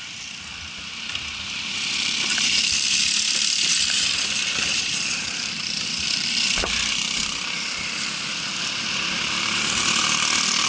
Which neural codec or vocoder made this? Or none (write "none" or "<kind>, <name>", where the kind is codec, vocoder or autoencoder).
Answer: vocoder, BigVGAN v2